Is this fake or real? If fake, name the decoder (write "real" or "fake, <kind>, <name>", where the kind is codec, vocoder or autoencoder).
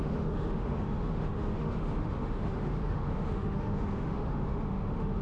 fake, autoencoder, DAC-VAE